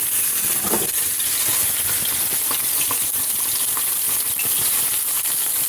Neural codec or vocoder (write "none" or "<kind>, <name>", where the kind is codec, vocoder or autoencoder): none